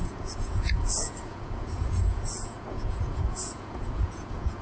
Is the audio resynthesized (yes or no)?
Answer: yes